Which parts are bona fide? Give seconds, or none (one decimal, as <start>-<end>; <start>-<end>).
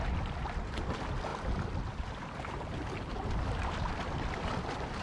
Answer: 0.0-5.0